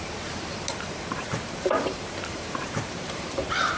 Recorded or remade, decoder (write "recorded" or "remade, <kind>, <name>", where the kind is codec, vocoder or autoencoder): remade, vocoder, BigVGAN v2